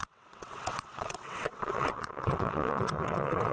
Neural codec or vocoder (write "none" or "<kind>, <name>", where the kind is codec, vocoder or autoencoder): vocoder, WaveNeXt